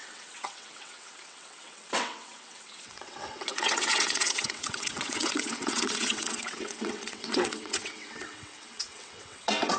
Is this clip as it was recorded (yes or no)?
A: no